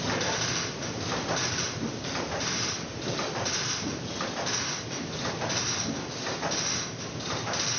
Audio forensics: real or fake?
real